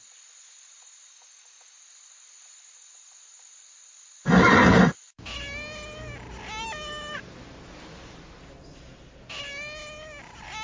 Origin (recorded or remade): recorded